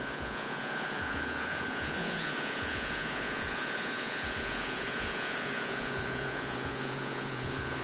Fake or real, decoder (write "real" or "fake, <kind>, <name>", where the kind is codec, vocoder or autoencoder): fake, vocoder, Vocos